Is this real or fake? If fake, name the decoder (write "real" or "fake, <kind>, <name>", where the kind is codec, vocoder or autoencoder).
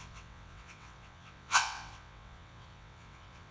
fake, vocoder, WaveNeXt